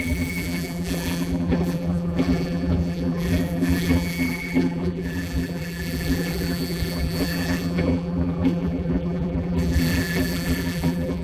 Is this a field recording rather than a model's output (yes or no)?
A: no